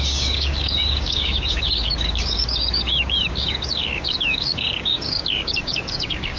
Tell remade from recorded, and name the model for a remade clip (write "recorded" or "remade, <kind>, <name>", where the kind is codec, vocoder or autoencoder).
remade, codec, DAC